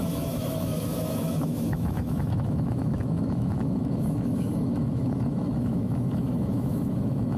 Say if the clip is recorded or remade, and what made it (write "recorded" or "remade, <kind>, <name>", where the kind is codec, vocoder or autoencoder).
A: remade, autoencoder, DAC-VAE